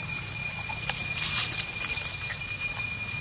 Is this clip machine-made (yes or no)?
no